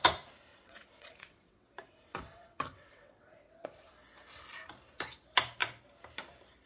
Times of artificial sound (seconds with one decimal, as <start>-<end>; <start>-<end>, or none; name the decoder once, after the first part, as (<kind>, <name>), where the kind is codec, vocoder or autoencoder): 0.5-3.9 (vocoder, WaveNeXt)